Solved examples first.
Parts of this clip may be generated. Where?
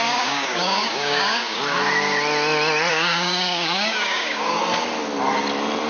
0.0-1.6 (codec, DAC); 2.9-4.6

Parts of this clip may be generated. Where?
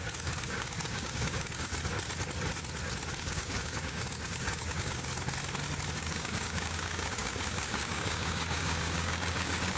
0.0-1.7 (codec, DAC); 3.1-5.1; 6.0-9.8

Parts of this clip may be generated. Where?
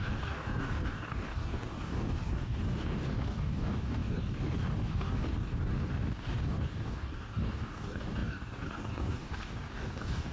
0.0-10.3 (codec, DAC)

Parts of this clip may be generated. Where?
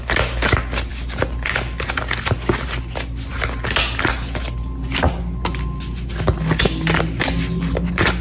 none